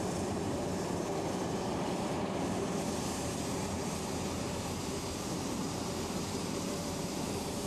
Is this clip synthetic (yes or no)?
yes